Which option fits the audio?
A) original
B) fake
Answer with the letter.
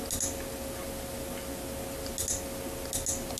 A